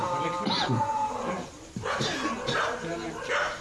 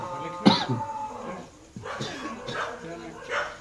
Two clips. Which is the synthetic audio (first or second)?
first